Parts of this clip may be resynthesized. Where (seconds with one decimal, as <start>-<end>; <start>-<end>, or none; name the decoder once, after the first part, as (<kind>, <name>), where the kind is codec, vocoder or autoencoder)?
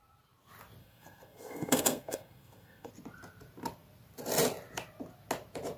0.8-2.9 (codec, SNAC)